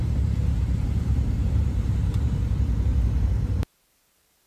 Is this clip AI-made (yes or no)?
yes